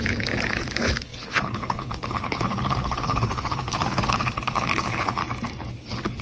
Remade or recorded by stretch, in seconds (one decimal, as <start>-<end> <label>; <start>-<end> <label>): 0.0-5.2 remade; 5.2-5.7 recorded; 5.7-6.2 remade

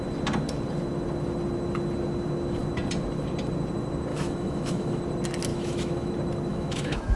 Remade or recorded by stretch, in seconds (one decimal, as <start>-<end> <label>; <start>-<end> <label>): 0.0-4.1 recorded; 4.1-5.0 remade; 5.0-5.5 recorded; 5.5-6.1 remade; 6.1-6.5 recorded; 6.5-7.2 remade

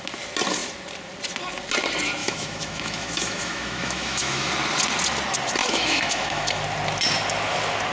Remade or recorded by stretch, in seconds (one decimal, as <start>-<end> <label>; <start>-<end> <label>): 0.0-2.2 recorded; 2.2-4.5 remade; 4.5-5.6 recorded; 5.6-6.6 remade; 6.6-7.9 recorded

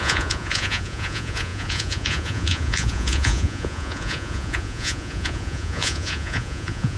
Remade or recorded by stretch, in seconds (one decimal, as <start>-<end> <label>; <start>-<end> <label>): 0.0-7.0 remade